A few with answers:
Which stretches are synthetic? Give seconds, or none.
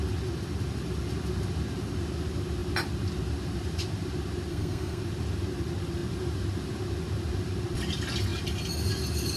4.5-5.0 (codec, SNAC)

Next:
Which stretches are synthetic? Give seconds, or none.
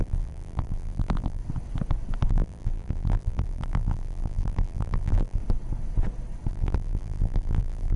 0.0-1.4 (vocoder, BigVGAN v2); 2.3-5.4; 6.5-8.0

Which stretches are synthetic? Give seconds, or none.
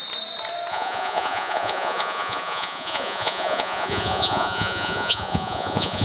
0.7-6.0 (vocoder, Vocos)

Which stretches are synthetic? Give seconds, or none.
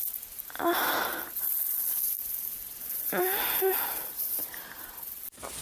none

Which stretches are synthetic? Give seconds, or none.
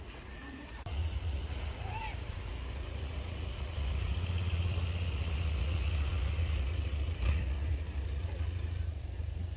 0.0-9.6 (vocoder, Vocos)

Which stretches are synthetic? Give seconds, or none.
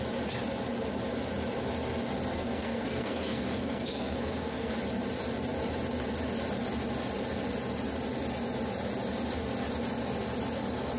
2.3-4.7 (codec, SNAC)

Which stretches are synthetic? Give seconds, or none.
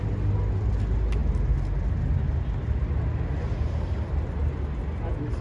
none